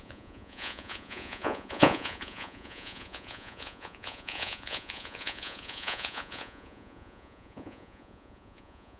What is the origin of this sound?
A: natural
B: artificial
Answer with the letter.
B